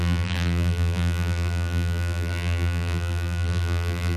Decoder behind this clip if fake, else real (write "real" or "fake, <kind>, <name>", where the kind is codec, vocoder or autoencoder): fake, vocoder, BigVGAN v2